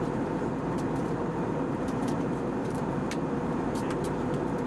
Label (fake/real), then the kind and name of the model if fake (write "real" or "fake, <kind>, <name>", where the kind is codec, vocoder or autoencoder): fake, vocoder, BigVGAN v2